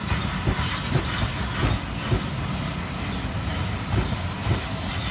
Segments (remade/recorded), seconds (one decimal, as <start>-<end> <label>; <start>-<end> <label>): 0.0-5.1 recorded